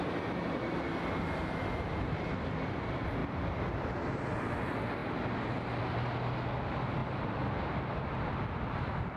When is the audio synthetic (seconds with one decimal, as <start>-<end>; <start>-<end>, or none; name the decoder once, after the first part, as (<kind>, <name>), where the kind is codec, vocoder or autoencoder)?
3.2-4.5 (vocoder, BigVGAN v2)